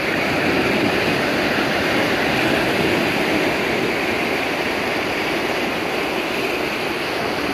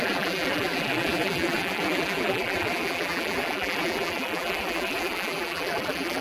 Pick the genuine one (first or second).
first